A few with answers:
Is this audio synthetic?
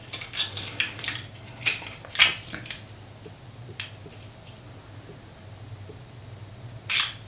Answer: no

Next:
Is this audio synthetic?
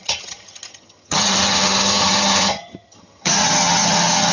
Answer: yes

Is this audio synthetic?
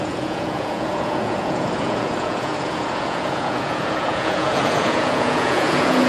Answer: yes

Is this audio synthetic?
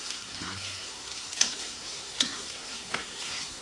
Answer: yes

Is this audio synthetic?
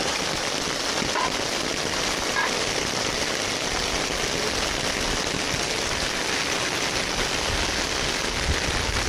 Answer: no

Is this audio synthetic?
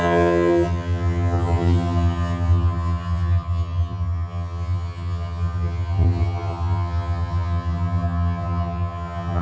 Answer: yes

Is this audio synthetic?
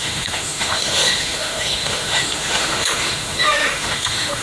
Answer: yes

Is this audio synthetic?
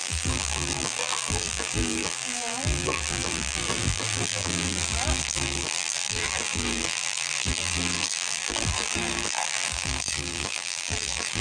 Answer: yes